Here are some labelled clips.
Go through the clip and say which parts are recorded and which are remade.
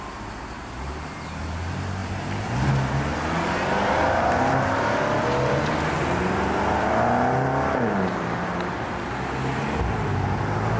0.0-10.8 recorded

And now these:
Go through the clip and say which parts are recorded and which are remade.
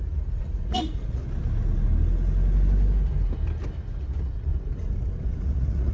0.0-1.2 remade; 1.2-4.0 recorded; 4.0-4.5 remade; 4.5-5.4 recorded; 5.4-5.9 remade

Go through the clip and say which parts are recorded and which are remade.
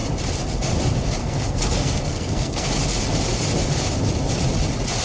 0.0-1.2 recorded; 1.2-2.7 remade; 2.7-5.0 recorded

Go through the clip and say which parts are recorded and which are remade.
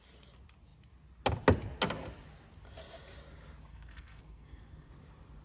0.0-3.7 recorded; 3.7-4.9 remade; 4.9-5.4 recorded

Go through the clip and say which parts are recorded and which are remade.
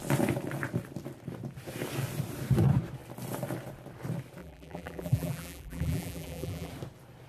0.0-4.4 recorded; 4.4-6.7 remade; 6.7-7.3 recorded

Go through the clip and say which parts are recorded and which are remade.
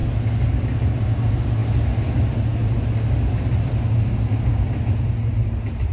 0.0-5.9 recorded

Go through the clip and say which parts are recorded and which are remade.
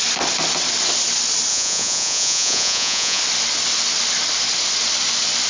0.0-1.5 recorded; 1.5-3.2 remade; 3.2-5.5 recorded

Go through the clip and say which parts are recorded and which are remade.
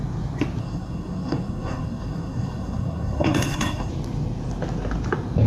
0.0-0.6 recorded; 0.6-3.9 remade; 3.9-5.5 recorded